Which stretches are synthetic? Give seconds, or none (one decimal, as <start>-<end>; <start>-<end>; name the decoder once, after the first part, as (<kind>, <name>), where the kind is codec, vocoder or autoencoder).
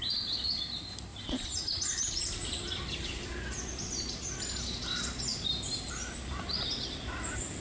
1.1-2.6 (vocoder, BigVGAN v2); 5.3-6.1